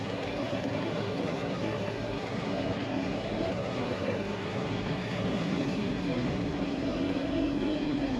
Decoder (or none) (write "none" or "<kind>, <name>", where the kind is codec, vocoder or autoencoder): codec, SNAC